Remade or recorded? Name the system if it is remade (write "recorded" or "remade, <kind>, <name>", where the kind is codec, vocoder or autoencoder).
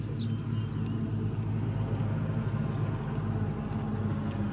recorded